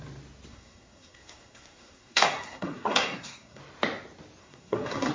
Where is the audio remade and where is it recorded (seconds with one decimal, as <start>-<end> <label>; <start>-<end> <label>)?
0.0-0.5 recorded; 0.5-3.6 remade; 3.6-4.4 recorded; 4.4-5.1 remade